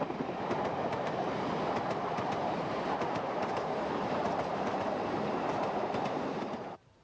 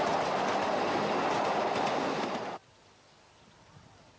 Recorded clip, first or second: second